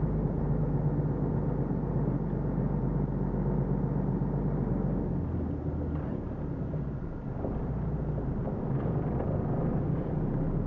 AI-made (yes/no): no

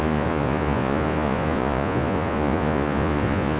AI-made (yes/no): yes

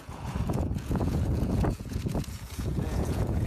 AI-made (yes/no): yes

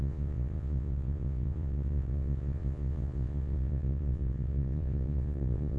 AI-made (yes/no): yes